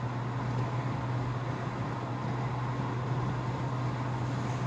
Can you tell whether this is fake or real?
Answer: real